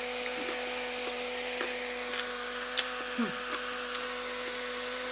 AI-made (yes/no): no